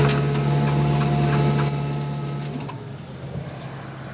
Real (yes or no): yes